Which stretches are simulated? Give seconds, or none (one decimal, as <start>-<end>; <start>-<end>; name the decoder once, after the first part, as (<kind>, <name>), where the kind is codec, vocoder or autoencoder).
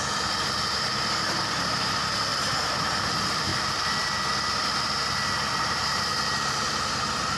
0.0-3.5 (vocoder, BigVGAN v2); 5.6-7.4